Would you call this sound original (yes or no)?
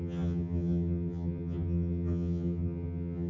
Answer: no